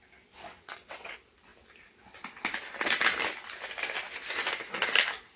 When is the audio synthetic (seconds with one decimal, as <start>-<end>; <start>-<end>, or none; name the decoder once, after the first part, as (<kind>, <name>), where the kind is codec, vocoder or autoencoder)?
0.4-1.1 (vocoder, WaveNeXt)